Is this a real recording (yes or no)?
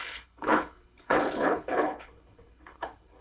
no